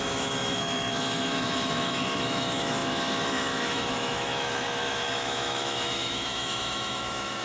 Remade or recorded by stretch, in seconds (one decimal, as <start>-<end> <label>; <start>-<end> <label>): 0.0-7.4 remade